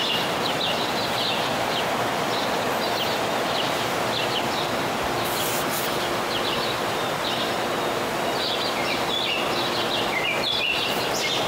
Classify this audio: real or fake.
fake